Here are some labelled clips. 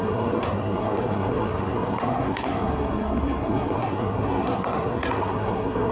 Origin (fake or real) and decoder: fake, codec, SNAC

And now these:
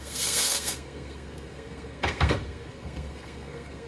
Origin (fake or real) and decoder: fake, codec, SNAC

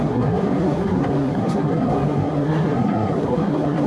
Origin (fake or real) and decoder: fake, codec, SNAC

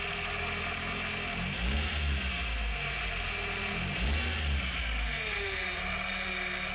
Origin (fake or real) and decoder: real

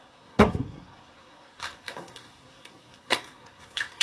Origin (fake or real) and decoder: fake, codec, SNAC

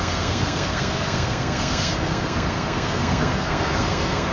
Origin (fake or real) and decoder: fake, codec, SNAC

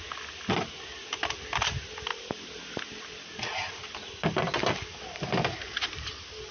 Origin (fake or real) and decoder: real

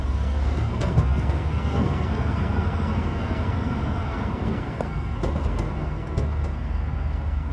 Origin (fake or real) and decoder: fake, codec, SNAC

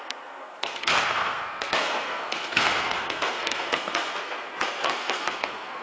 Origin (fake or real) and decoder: fake, codec, SNAC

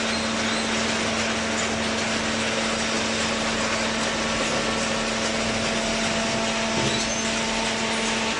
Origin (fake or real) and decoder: real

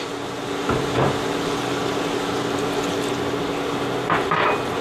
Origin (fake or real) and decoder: real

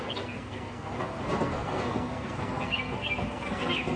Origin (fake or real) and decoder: fake, codec, SNAC